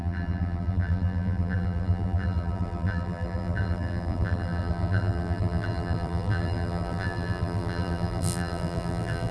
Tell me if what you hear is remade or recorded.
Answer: remade